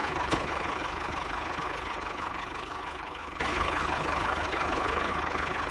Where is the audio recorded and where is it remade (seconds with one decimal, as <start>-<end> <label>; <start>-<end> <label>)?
0.0-5.7 remade